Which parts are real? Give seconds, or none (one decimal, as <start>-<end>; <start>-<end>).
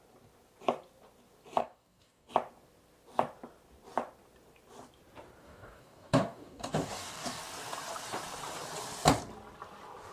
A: 0.0-1.6; 2.3-5.4; 7.4-10.1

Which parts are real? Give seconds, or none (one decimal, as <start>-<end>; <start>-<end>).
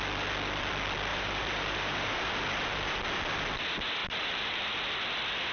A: 0.0-1.1; 2.2-4.0; 4.6-5.5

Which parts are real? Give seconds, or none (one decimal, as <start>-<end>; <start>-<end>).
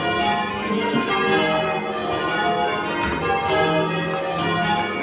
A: 0.0-0.5; 1.1-5.0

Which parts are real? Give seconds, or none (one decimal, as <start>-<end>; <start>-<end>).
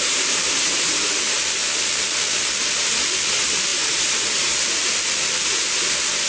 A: 1.6-3.3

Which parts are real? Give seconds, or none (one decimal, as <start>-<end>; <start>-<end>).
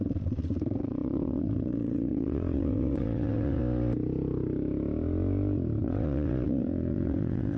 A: 3.6-5.8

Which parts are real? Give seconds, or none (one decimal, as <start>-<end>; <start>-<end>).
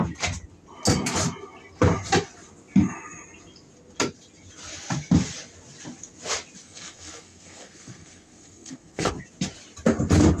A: 0.0-6.6; 9.1-10.4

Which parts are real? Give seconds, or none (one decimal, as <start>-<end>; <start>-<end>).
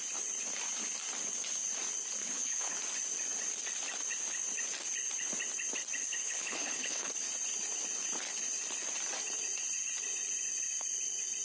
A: 0.0-2.2; 2.7-6.0; 7.1-11.4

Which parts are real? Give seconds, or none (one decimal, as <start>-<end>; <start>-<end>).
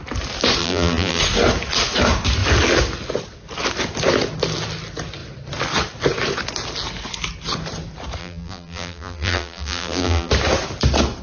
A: 0.0-0.6; 1.2-8.2; 10.3-11.2